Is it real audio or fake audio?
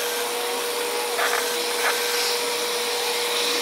real